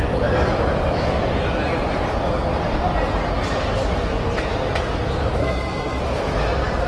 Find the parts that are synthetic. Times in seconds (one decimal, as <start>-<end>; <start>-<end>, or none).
5.4-6.0